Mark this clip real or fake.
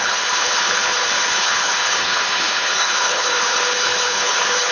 fake